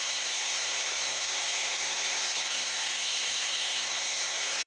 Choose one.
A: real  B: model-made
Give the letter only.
B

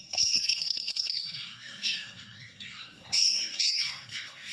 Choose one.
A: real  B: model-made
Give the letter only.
B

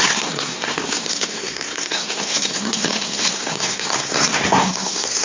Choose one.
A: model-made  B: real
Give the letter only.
A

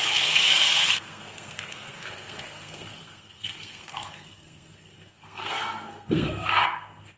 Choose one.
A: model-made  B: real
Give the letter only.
A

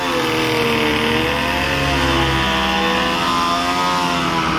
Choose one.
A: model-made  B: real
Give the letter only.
B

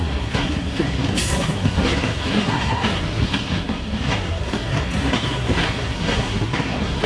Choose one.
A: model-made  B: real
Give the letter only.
A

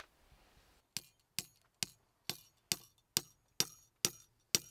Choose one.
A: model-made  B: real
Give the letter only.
B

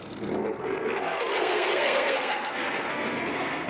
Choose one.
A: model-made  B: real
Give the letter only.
A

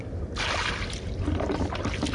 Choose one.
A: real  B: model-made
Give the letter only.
A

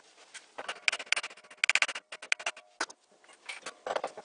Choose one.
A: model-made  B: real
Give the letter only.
B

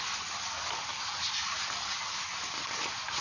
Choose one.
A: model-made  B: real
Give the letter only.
B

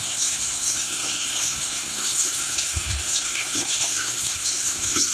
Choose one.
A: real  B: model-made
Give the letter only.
B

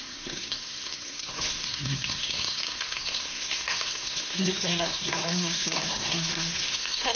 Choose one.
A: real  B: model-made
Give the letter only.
B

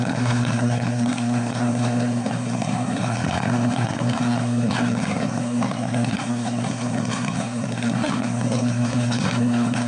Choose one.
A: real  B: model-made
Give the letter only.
B